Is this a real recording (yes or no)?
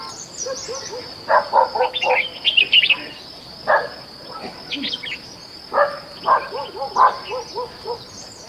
yes